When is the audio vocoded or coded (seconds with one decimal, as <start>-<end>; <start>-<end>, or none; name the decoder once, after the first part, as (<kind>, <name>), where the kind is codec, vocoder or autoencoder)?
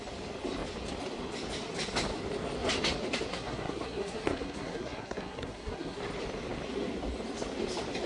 3.3-6.0 (codec, SNAC)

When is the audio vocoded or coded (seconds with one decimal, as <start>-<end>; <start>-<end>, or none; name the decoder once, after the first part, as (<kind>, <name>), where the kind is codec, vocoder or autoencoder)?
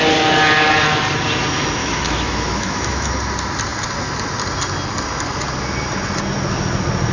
1.8-3.1 (autoencoder, DAC-VAE)